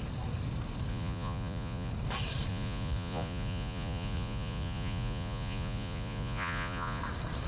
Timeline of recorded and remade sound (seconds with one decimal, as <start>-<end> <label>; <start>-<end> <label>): 0.0-0.9 recorded; 0.9-1.9 remade; 1.9-2.5 recorded; 2.5-7.0 remade; 7.0-7.5 recorded